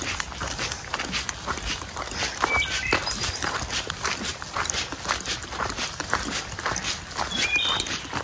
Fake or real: real